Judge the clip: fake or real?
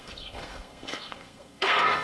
fake